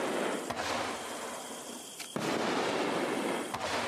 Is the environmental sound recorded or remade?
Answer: recorded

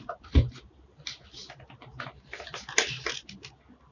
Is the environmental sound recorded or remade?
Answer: recorded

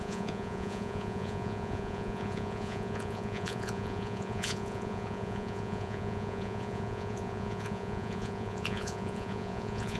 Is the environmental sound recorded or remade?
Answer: remade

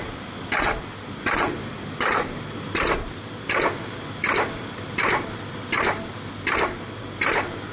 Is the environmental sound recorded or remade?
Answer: recorded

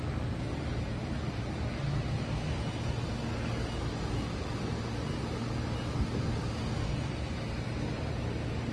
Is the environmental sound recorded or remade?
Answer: recorded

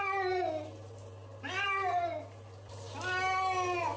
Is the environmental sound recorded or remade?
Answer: recorded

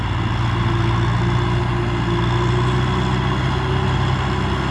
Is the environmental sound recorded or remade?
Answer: recorded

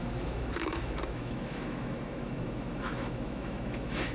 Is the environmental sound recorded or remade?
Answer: remade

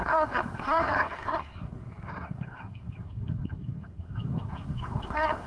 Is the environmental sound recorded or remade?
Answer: remade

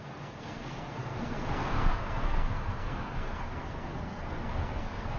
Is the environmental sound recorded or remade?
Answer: remade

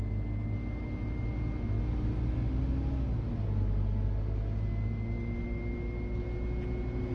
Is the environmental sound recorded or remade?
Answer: recorded